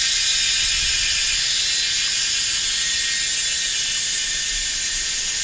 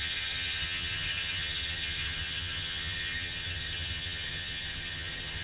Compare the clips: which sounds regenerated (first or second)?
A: second